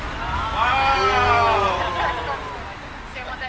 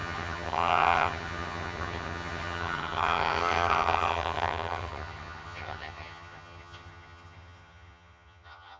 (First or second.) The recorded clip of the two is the first